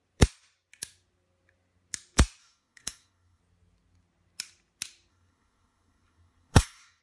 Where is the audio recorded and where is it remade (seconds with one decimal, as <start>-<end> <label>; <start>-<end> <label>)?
0.0-2.4 recorded; 2.4-3.4 remade; 3.4-5.1 recorded; 5.1-7.0 remade